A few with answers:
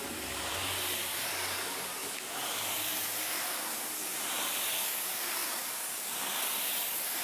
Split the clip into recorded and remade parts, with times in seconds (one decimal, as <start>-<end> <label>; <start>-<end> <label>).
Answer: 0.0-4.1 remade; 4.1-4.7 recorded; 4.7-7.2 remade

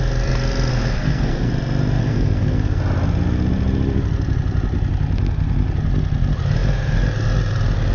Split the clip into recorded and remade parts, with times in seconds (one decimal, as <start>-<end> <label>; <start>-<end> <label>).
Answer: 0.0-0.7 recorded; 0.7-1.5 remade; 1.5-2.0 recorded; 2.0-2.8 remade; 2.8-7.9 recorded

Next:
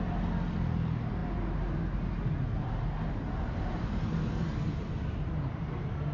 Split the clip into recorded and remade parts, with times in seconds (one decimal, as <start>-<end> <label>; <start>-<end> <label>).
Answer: 0.0-6.1 recorded

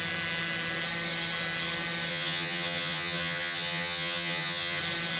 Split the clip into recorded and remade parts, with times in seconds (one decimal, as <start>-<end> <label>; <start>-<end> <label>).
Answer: 0.0-2.1 recorded; 2.1-4.8 remade; 4.8-5.2 recorded

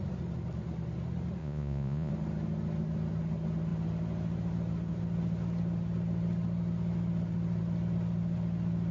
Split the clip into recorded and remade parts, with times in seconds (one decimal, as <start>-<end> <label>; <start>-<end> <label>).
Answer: 0.0-1.4 recorded; 1.4-2.1 remade; 2.1-8.9 recorded

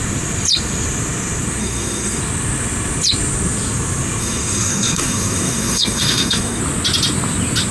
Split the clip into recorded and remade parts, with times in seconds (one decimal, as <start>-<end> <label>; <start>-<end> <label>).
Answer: 0.0-1.6 recorded; 1.6-2.2 remade; 2.2-4.2 recorded; 4.2-6.6 remade; 6.6-7.7 recorded

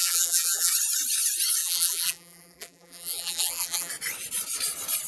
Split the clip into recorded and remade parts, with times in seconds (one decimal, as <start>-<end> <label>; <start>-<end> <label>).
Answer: 0.0-0.7 remade; 0.7-1.6 recorded; 1.6-3.9 remade; 3.9-5.1 recorded